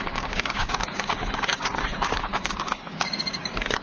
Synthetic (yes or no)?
yes